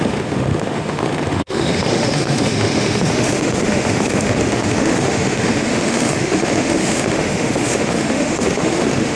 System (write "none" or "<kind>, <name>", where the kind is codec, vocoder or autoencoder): autoencoder, DAC-VAE